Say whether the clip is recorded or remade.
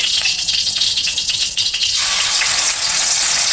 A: remade